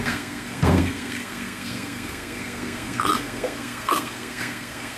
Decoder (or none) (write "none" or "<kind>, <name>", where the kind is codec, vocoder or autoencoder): codec, SNAC